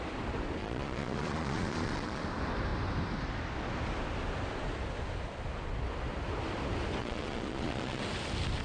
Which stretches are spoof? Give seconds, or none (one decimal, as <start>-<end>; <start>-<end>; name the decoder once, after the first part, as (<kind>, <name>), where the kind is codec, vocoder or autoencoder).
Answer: 0.6-2.2 (vocoder, Vocos); 7.0-8.0

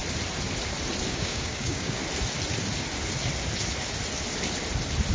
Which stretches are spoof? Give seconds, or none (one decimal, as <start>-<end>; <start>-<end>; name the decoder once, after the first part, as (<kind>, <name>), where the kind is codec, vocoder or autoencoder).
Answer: 1.1-2.0 (codec, DAC)